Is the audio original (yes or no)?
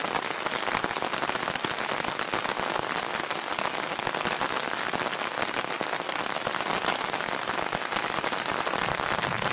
yes